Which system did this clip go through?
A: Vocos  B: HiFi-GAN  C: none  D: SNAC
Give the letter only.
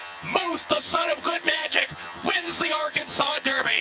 B